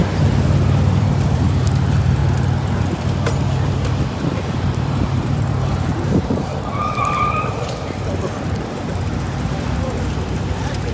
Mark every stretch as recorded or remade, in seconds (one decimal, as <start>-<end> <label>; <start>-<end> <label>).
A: 0.0-1.0 recorded; 1.0-2.2 remade; 2.2-4.1 recorded; 4.1-10.9 remade